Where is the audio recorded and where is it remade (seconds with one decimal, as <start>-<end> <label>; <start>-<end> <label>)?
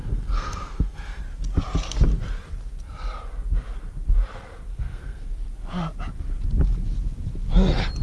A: 0.0-1.2 remade; 1.2-4.7 recorded; 4.7-5.3 remade; 5.3-8.0 recorded